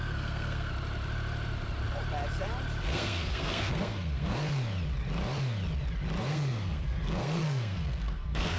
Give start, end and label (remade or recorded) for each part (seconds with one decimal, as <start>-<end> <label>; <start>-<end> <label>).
0.0-0.7 remade; 0.7-2.8 recorded; 2.8-4.4 remade; 4.4-6.3 recorded; 6.3-8.6 remade